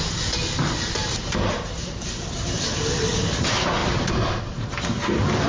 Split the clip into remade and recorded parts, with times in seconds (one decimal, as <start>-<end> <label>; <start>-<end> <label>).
0.0-1.0 recorded; 1.0-2.9 remade; 2.9-3.8 recorded; 3.8-4.4 remade; 4.4-5.5 recorded